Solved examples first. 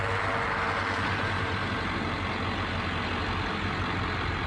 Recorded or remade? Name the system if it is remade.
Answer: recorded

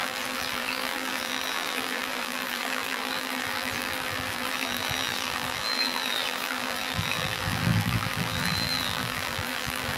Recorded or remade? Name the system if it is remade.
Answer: remade, vocoder, BigVGAN v2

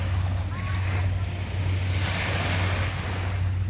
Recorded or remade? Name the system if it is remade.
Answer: recorded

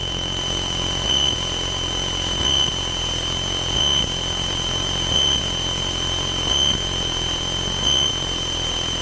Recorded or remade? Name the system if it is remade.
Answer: remade, vocoder, BigVGAN v2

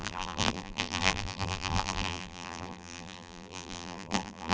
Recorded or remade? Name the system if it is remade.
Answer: remade, vocoder, BigVGAN v2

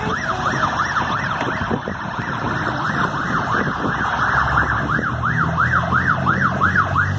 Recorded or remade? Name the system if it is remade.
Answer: remade, vocoder, BigVGAN v2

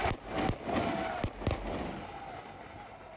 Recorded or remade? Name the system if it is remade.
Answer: recorded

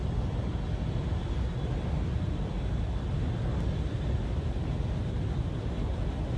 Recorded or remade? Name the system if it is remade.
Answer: recorded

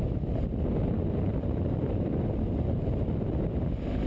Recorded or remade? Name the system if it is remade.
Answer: recorded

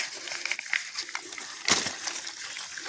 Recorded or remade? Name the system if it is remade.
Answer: recorded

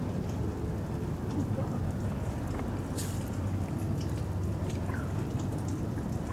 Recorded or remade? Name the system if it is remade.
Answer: recorded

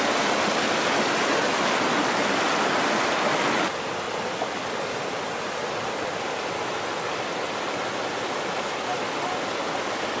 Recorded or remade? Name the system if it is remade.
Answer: recorded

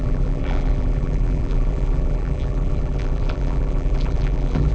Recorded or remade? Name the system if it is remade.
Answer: remade, vocoder, BigVGAN v2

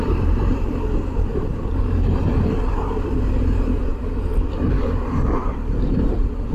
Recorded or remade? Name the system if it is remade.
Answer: remade, vocoder, BigVGAN v2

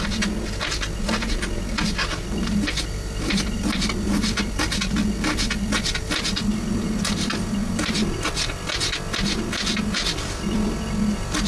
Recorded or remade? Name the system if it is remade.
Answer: remade, vocoder, BigVGAN v2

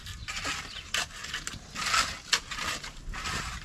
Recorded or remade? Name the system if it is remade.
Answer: recorded